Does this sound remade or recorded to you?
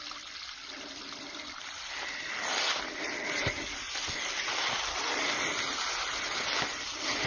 recorded